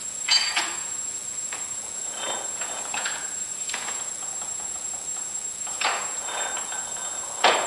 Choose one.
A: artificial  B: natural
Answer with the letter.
A